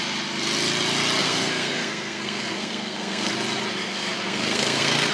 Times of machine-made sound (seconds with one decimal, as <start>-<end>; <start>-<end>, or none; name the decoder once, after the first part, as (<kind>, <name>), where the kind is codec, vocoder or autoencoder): 1.2-3.3 (codec, SNAC); 3.8-5.1